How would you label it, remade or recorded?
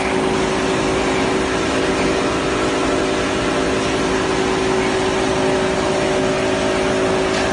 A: recorded